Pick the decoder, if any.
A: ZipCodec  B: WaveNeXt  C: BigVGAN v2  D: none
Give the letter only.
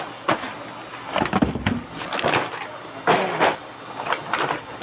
D